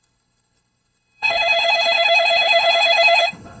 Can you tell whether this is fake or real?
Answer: fake